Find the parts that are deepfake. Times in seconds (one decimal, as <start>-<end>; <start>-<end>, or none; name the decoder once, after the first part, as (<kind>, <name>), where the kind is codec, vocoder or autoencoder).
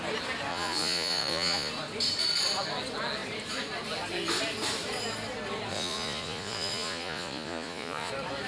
0.5-1.7 (vocoder, Vocos); 5.7-8.1